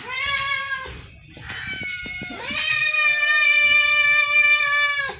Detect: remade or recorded recorded